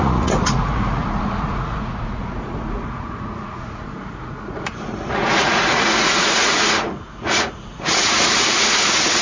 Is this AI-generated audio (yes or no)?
yes